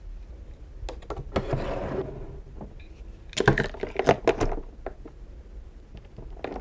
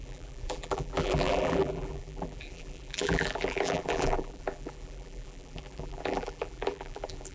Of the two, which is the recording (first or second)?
first